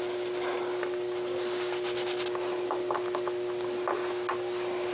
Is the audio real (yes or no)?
yes